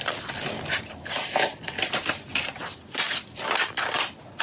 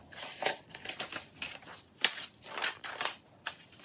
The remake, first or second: second